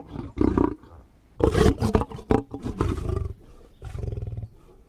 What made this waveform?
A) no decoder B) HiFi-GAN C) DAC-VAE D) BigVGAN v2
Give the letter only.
A